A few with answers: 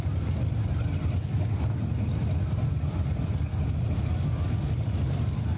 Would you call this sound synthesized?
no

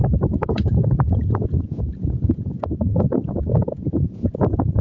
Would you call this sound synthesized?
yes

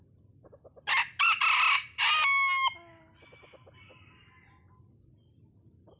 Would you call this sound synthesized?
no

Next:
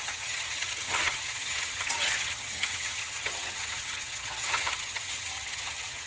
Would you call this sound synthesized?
yes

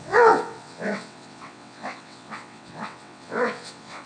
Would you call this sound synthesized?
yes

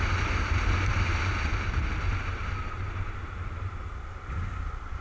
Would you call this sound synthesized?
no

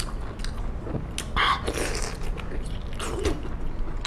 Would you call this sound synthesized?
no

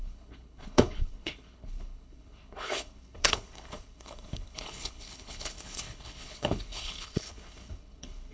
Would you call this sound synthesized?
yes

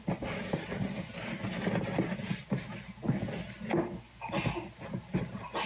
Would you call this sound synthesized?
no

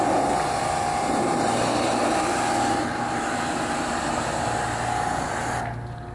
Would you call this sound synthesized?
no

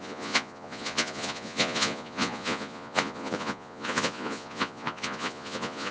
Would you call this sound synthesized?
yes